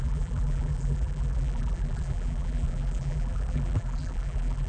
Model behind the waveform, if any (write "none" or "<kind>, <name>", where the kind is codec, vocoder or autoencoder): vocoder, BigVGAN v2